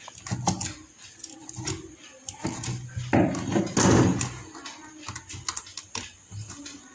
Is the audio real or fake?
real